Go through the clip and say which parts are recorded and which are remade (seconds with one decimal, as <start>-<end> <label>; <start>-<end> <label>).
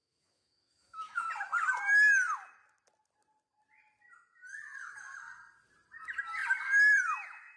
0.0-1.3 remade; 1.3-7.6 recorded